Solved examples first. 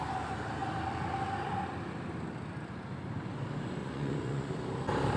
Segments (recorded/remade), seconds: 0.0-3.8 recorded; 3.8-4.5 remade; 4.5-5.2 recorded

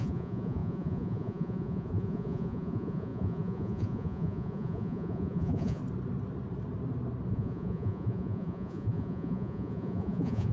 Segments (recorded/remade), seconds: 0.0-5.8 remade; 5.8-7.3 recorded; 7.3-10.5 remade

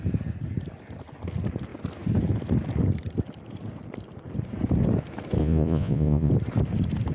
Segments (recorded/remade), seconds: 0.0-5.4 recorded; 5.4-6.3 remade; 6.3-7.1 recorded